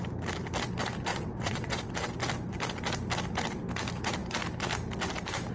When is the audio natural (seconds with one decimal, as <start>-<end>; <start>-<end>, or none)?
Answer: 0.0-1.1; 2.1-5.5